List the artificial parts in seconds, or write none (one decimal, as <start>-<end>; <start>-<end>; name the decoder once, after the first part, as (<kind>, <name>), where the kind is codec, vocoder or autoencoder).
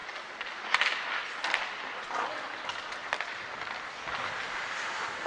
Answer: none